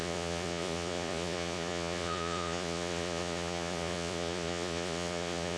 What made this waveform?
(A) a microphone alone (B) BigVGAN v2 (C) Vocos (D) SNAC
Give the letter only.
C